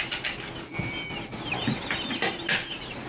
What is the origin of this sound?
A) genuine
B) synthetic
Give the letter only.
A